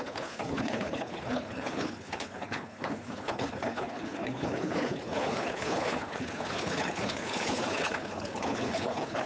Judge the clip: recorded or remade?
remade